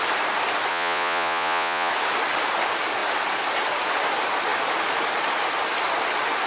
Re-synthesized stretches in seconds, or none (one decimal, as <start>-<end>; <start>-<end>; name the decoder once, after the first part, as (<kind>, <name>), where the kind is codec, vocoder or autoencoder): 0.7-1.9 (vocoder, Vocos)